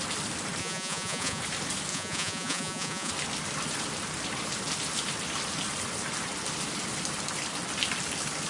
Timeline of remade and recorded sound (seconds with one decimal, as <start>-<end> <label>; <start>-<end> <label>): 0.0-0.6 recorded; 0.6-1.4 remade; 1.4-1.9 recorded; 1.9-3.1 remade; 3.1-8.5 recorded